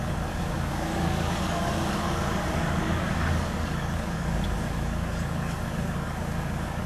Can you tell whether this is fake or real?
fake